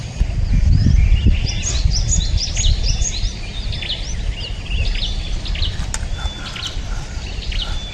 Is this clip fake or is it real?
real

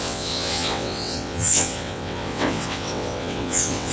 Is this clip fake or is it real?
fake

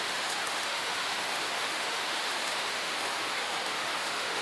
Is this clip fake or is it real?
fake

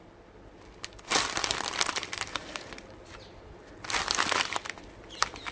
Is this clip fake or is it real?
fake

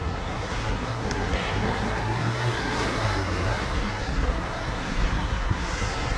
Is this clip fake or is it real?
fake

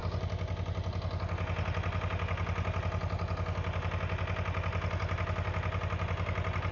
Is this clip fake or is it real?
real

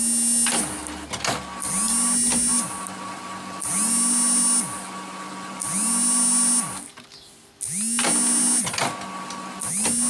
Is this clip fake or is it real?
real